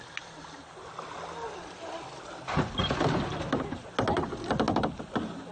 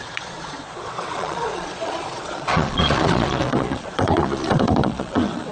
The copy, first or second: second